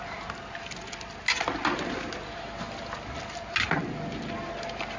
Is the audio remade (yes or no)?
no